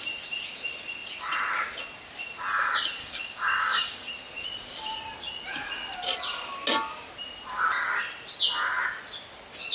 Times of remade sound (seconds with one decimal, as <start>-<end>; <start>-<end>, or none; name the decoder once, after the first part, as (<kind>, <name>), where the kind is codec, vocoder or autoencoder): 3.0-4.1 (codec, DAC)